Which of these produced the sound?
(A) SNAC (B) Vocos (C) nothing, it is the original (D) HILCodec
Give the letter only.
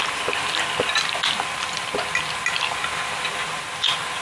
C